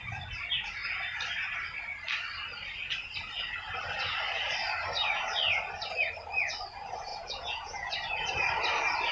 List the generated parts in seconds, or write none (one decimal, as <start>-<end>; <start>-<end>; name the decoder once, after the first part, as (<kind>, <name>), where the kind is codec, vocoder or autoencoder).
7.1-7.9 (vocoder, Vocos)